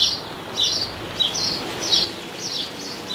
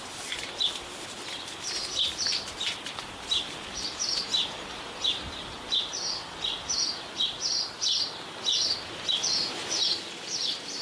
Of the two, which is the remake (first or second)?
second